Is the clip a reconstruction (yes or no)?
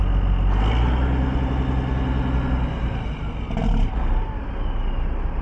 no